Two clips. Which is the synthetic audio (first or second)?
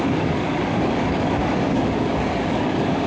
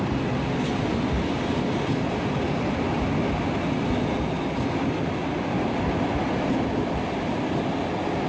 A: first